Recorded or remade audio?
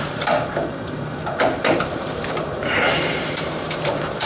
remade